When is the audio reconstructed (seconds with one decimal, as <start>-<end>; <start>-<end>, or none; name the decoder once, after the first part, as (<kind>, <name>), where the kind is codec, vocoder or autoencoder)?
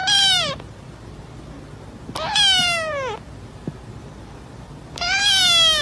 0.0-1.5 (vocoder, BigVGAN v2); 2.6-5.2